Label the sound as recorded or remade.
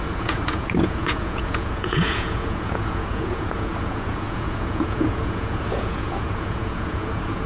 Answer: remade